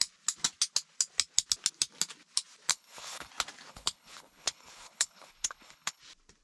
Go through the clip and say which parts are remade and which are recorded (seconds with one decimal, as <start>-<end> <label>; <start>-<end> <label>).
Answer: 0.0-2.7 recorded; 2.7-3.3 remade; 3.3-3.7 recorded; 3.7-6.0 remade; 6.0-6.4 recorded